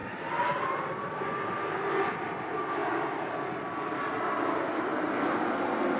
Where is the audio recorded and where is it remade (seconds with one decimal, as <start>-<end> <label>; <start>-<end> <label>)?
0.0-6.0 recorded